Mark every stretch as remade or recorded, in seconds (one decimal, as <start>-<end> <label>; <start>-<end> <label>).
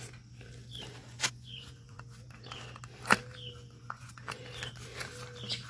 0.0-1.0 recorded; 1.0-2.0 remade; 2.0-3.8 recorded; 3.8-4.4 remade; 4.4-5.7 recorded